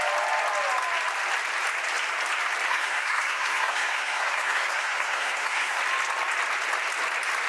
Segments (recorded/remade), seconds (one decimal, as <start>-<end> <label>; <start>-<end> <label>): 0.0-2.7 recorded; 2.7-5.8 remade; 5.8-7.5 recorded